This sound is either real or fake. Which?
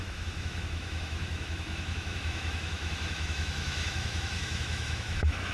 fake